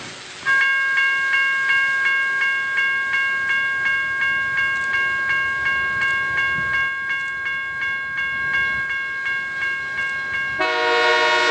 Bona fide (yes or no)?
yes